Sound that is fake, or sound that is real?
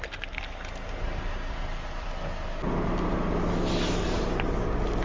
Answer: real